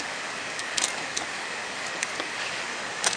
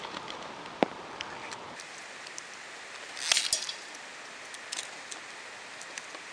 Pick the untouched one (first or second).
second